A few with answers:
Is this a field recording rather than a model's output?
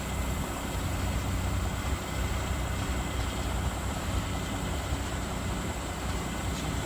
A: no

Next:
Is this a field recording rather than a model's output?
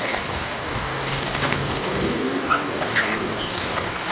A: no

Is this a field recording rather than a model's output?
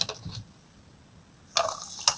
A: yes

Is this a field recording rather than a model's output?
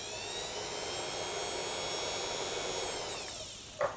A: yes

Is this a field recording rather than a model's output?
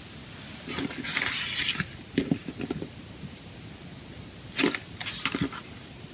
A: yes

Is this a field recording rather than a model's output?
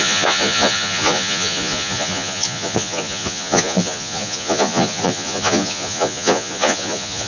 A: no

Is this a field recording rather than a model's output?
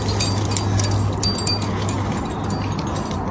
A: yes